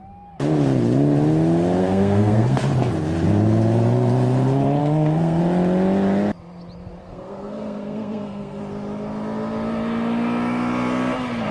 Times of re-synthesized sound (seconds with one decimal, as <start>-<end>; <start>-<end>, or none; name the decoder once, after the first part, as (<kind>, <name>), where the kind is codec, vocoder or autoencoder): 1.8-2.6 (codec, SNAC); 4.8-5.4; 7.0-8.6